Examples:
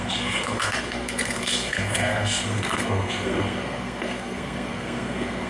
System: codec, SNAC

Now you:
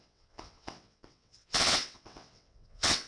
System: vocoder, WaveNeXt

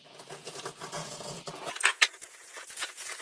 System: vocoder, Vocos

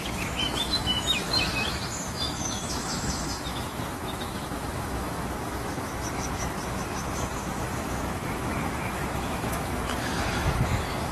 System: autoencoder, DAC-VAE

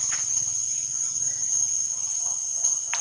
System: none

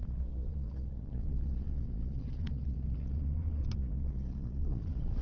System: vocoder, Vocos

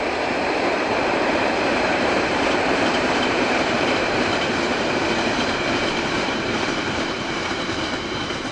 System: vocoder, BigVGAN v2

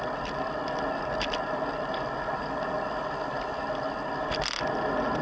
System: none